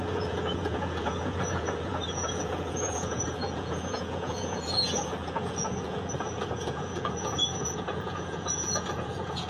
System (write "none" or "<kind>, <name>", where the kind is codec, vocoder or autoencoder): vocoder, Vocos